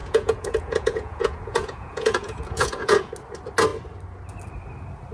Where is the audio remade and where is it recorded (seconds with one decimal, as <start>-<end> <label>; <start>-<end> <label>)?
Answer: 0.0-3.1 remade; 3.1-5.1 recorded